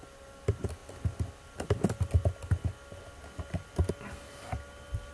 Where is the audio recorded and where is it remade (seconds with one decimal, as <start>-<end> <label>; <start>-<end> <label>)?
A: 0.0-5.1 recorded